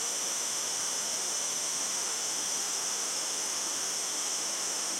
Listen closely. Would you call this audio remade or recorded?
remade